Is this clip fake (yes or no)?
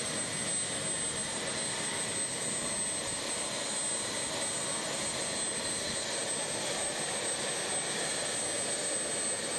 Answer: no